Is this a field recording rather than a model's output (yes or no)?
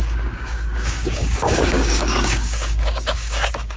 no